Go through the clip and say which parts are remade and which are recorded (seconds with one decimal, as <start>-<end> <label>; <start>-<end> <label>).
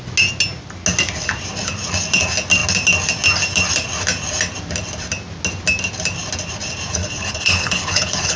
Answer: 0.0-7.0 recorded; 7.0-8.4 remade